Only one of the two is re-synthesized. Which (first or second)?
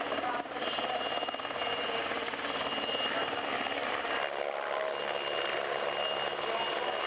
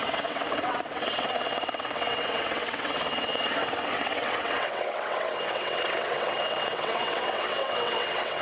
second